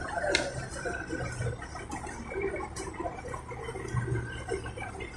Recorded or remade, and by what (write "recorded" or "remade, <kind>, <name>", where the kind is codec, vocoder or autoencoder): recorded